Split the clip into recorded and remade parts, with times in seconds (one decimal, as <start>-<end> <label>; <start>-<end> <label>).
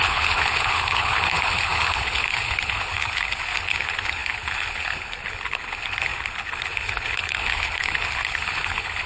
0.0-9.1 remade